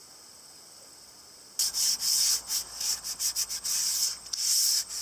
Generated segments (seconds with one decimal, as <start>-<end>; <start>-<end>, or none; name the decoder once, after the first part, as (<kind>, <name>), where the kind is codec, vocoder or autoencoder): none